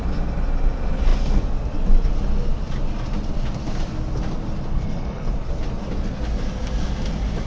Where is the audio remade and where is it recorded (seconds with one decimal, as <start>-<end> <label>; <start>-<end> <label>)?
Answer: 0.0-4.7 recorded; 4.7-5.3 remade; 5.3-7.5 recorded